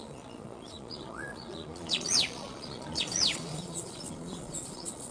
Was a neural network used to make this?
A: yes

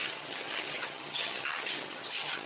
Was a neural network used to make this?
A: yes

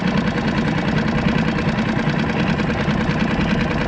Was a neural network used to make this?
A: no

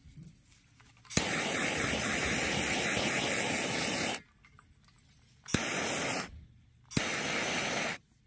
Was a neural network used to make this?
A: no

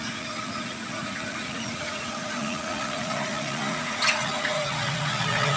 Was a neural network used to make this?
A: yes